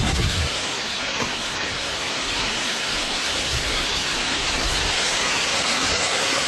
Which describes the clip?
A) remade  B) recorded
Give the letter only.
A